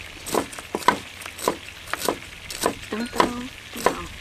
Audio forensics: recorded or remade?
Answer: recorded